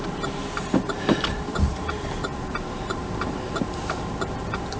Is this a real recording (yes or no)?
no